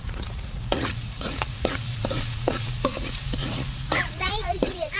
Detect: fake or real fake